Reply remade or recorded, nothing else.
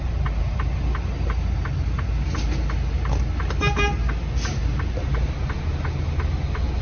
recorded